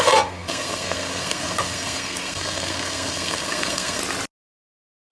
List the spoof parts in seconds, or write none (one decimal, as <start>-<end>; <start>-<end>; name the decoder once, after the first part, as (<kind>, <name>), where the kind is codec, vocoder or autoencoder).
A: 0.0-4.0 (codec, SNAC)